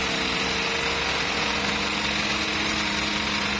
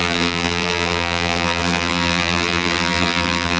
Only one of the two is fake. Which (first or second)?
second